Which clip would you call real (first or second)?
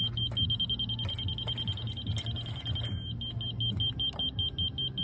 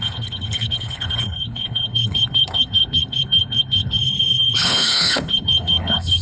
first